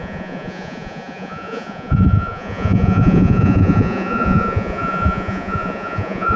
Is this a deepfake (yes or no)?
yes